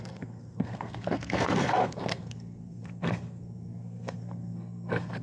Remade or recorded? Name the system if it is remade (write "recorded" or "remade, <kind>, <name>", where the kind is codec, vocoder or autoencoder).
remade, codec, SNAC